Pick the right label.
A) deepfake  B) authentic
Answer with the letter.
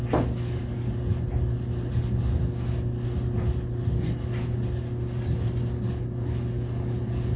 B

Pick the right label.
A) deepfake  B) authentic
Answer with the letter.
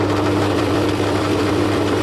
A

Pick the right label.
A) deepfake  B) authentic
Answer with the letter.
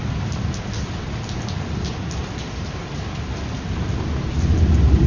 B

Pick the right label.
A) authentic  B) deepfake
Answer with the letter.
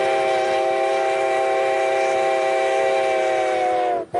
A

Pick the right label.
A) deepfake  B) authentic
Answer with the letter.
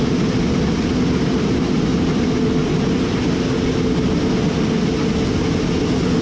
B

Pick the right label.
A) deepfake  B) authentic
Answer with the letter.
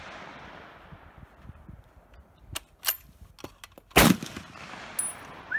B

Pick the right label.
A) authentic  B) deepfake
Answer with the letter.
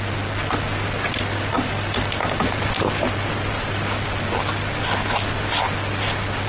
A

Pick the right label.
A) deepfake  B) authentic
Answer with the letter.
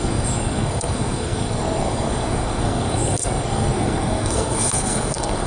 A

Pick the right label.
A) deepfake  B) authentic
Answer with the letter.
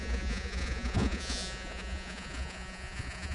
A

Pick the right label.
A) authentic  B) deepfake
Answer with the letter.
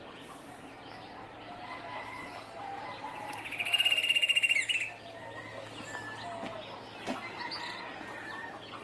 A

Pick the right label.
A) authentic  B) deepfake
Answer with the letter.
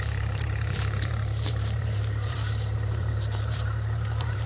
B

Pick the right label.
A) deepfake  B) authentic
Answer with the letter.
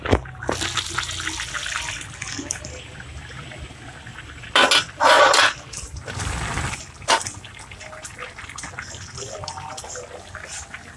B